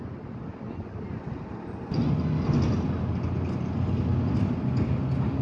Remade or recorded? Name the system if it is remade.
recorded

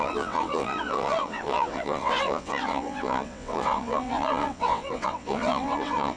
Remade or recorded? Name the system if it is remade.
remade, vocoder, WaveNeXt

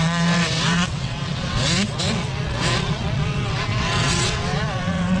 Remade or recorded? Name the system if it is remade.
remade, vocoder, WaveNeXt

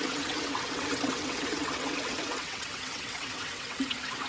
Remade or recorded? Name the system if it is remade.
remade, vocoder, WaveNeXt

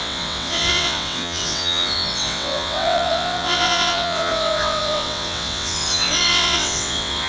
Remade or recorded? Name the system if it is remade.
remade, vocoder, WaveNeXt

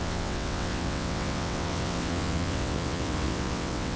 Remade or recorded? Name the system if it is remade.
remade, vocoder, WaveNeXt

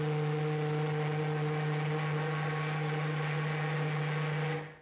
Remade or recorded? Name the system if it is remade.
recorded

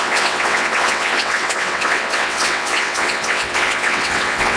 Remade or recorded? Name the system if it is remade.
remade, vocoder, WaveNeXt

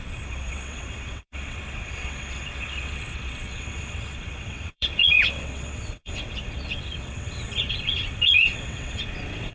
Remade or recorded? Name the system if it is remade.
remade, vocoder, WaveNeXt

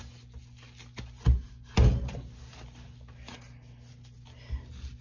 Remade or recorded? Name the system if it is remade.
recorded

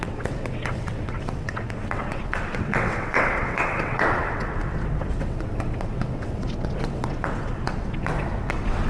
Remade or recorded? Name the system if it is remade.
remade, vocoder, WaveNeXt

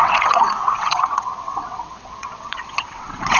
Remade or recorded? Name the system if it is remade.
remade, vocoder, WaveNeXt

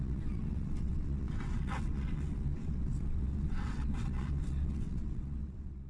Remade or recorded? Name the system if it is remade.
remade, vocoder, WaveNeXt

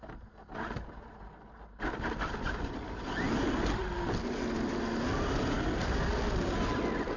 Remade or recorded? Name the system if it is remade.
recorded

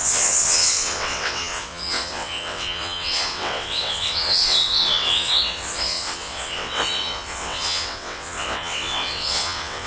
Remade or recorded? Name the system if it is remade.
remade, vocoder, WaveNeXt